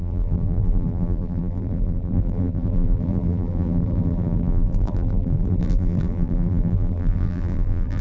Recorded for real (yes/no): no